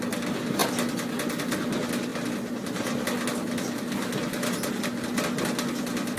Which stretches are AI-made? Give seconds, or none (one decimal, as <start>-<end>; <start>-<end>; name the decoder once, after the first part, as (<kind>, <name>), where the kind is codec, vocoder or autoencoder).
none